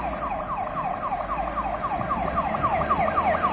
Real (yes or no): yes